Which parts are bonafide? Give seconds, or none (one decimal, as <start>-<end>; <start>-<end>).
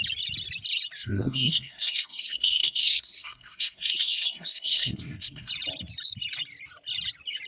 0.0-1.0; 5.5-7.5